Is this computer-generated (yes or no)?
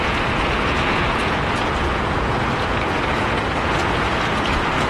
yes